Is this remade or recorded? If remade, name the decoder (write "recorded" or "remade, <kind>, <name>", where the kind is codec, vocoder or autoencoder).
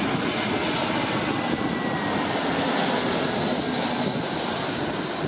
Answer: recorded